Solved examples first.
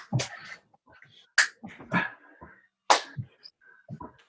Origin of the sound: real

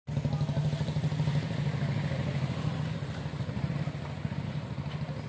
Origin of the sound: real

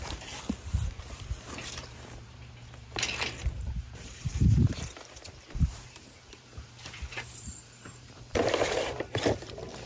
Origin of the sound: fake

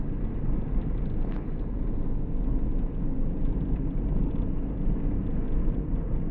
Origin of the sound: real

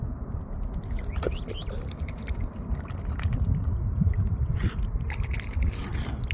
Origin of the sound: real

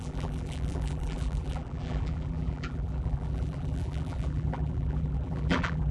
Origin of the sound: fake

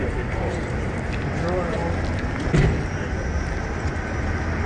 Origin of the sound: real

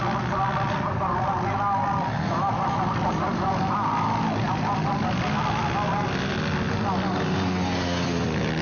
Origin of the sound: real